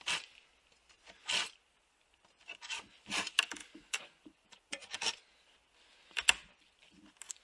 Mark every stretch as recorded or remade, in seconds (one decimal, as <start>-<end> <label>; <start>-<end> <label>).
0.0-3.6 recorded; 3.6-4.9 remade; 4.9-7.4 recorded